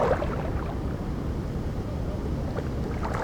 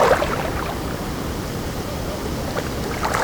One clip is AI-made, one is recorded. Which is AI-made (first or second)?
second